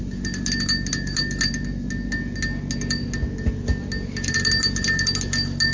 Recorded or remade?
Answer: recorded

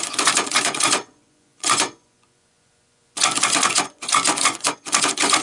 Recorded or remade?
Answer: remade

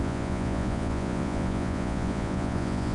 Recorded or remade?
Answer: remade